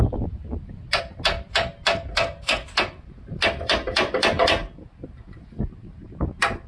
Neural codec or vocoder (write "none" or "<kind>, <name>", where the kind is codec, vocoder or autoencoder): none